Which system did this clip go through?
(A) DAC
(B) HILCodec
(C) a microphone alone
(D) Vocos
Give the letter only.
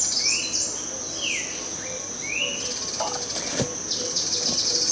C